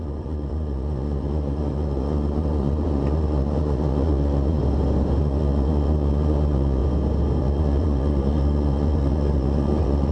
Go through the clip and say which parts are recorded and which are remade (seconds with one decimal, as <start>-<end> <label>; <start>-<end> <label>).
0.0-4.6 remade; 4.6-5.2 recorded; 5.2-6.8 remade; 6.8-7.4 recorded; 7.4-10.1 remade